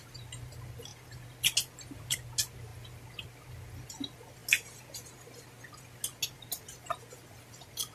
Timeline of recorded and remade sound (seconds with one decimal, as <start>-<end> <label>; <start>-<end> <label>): 0.0-7.9 recorded

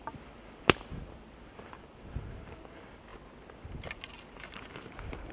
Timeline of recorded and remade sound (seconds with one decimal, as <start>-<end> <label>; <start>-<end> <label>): 0.0-5.3 recorded

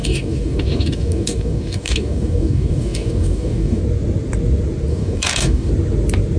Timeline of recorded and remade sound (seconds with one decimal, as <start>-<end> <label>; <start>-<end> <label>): 0.0-3.8 remade; 3.8-4.9 recorded; 4.9-5.7 remade; 5.7-6.4 recorded